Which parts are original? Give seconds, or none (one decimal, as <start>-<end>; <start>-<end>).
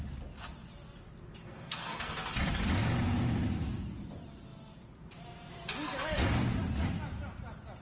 0.0-1.4; 2.1-7.8